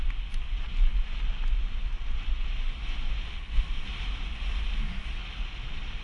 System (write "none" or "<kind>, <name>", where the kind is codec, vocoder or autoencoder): none